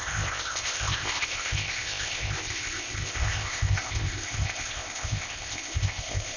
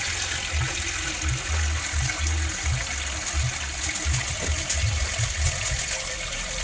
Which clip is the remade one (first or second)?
first